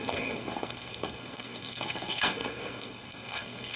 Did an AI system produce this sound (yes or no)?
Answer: yes